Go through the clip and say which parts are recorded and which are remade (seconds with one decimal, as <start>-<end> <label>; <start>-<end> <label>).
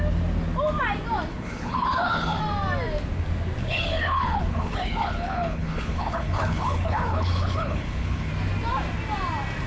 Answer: 0.0-1.3 recorded; 1.3-2.4 remade; 2.4-3.6 recorded; 3.6-8.3 remade; 8.3-9.7 recorded